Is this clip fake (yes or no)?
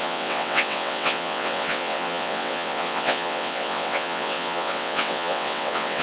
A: yes